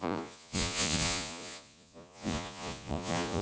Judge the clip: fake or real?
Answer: fake